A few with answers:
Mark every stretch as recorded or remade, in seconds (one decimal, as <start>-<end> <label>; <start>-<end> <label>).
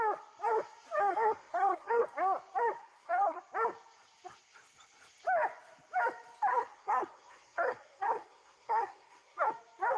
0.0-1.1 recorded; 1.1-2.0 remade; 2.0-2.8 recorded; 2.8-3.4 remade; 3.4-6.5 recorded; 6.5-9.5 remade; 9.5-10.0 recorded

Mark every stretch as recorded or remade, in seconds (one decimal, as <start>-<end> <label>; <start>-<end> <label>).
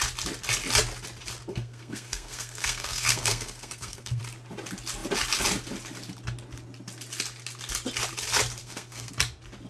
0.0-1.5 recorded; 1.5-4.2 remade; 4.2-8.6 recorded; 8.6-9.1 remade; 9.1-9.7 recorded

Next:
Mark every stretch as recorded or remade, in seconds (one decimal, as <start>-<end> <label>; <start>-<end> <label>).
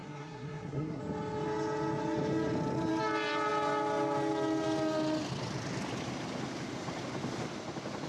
0.0-1.0 remade; 1.0-8.1 recorded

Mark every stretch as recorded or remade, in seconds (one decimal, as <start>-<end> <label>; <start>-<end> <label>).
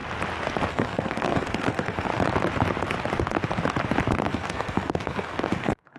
0.0-0.7 recorded; 0.7-2.1 remade; 2.1-4.2 recorded; 4.2-6.0 remade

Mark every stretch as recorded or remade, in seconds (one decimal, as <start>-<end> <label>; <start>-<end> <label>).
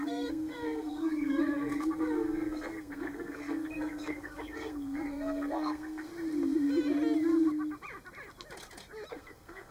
0.0-6.1 remade; 6.1-9.1 recorded; 9.1-9.7 remade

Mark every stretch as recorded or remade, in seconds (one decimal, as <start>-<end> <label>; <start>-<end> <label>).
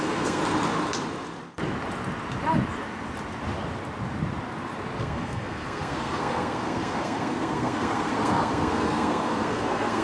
0.0-0.4 remade; 0.4-5.0 recorded; 5.0-10.0 remade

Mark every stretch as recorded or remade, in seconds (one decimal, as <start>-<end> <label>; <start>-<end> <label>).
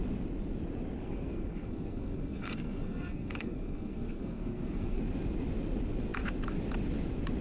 0.0-1.0 recorded; 1.0-5.0 remade; 5.0-7.4 recorded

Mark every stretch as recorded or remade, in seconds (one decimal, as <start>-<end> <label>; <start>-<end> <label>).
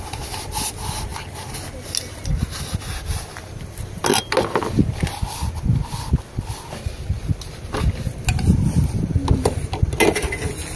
0.0-10.8 recorded